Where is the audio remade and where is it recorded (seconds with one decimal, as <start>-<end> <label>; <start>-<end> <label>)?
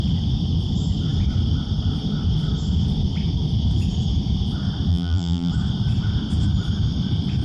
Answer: 0.0-4.9 recorded; 4.9-5.5 remade; 5.5-7.4 recorded